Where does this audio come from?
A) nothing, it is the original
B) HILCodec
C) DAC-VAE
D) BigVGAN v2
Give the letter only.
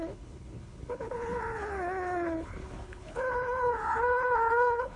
B